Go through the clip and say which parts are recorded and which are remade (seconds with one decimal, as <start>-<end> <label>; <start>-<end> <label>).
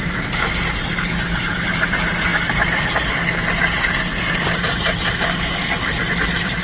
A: 0.0-6.6 recorded